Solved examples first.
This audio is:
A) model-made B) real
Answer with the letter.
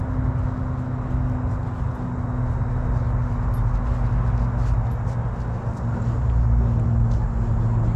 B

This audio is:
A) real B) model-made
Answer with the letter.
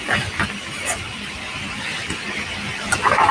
B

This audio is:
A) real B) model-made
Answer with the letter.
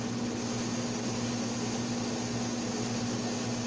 A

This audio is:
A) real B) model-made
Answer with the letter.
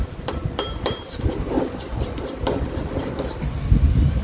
B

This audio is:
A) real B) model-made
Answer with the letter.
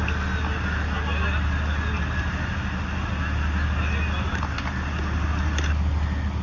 A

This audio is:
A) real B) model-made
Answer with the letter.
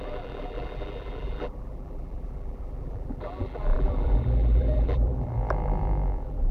B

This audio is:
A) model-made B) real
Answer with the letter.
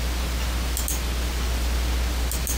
B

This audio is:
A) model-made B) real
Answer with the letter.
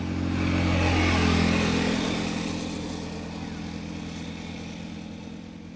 B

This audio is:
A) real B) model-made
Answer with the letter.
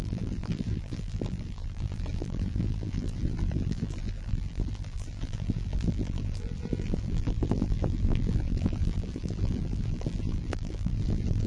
B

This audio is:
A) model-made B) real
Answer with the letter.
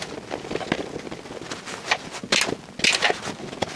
B